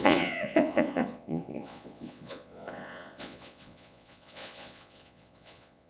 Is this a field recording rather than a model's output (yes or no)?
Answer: no